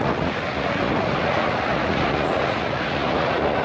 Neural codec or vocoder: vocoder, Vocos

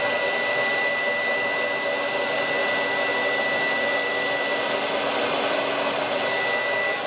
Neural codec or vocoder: none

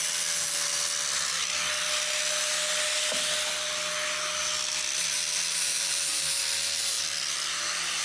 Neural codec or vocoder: none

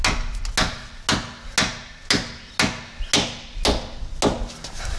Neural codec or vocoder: none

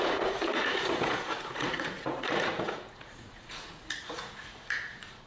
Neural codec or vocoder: vocoder, Vocos